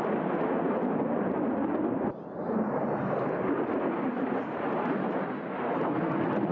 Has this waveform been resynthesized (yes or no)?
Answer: no